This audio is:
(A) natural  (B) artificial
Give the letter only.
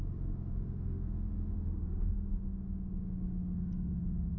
B